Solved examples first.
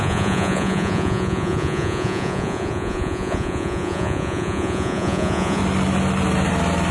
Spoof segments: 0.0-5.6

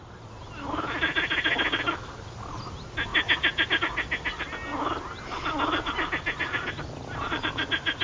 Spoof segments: none

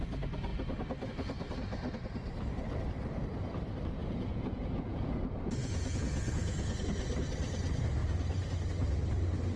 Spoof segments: 4.0-5.1; 5.6-6.8